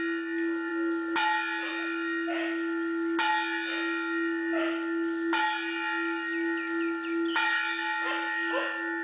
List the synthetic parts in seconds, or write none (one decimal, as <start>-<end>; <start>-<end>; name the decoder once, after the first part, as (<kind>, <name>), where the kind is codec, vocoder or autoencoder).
none

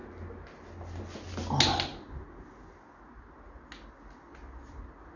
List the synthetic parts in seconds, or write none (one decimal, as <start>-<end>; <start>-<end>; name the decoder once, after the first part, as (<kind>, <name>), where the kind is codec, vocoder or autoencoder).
none

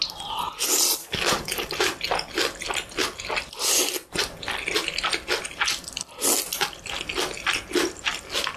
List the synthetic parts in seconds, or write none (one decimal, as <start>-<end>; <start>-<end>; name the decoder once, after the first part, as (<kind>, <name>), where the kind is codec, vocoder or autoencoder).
1.0-1.7 (codec, DAC)

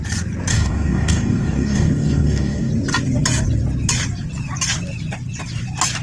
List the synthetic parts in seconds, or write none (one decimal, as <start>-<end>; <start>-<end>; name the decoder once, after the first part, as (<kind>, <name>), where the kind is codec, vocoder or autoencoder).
0.5-2.7 (codec, DAC)

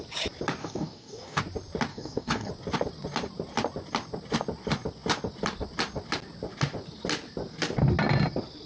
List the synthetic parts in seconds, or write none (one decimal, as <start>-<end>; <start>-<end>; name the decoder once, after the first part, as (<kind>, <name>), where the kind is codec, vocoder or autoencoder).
0.6-1.4 (codec, DAC); 1.9-2.5

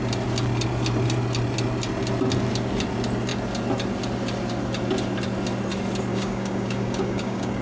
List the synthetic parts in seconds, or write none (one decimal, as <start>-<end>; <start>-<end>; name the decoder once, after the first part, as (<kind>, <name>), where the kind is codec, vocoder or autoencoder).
6.1-7.6 (codec, DAC)

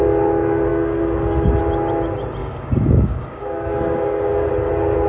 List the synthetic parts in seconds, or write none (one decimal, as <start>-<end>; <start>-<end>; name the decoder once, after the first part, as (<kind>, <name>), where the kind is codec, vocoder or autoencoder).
0.7-1.6 (codec, DAC); 2.4-4.5

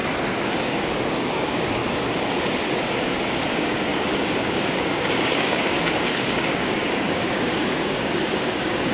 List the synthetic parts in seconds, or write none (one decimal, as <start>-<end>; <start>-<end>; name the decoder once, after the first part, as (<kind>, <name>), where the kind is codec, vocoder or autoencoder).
0.6-1.8 (codec, DAC); 3.5-8.9